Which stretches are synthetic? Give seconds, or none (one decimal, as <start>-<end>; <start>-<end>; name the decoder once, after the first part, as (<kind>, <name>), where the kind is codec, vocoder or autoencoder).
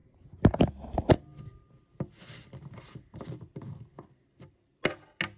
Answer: none